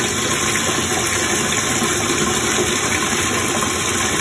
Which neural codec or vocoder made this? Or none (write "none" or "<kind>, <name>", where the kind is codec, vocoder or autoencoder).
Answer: none